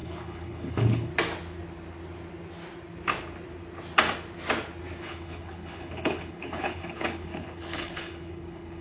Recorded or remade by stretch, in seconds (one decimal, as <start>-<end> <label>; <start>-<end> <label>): 0.0-1.1 remade; 1.1-5.0 recorded; 5.0-8.8 remade